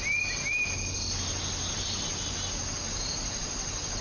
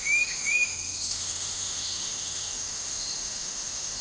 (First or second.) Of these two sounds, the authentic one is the first